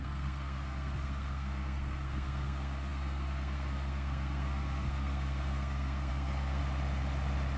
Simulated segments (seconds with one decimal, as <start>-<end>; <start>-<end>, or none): 0.0-6.6